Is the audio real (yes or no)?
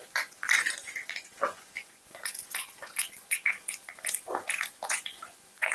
no